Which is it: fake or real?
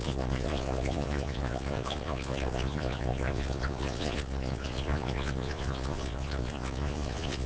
fake